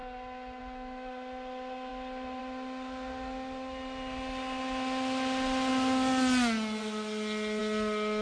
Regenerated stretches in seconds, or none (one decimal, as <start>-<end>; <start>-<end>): none